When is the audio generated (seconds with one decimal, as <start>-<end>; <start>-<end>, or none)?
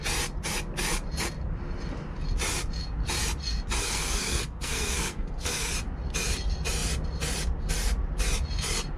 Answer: 3.8-5.7